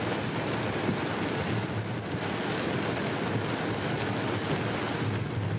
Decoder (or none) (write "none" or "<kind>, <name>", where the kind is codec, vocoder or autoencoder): none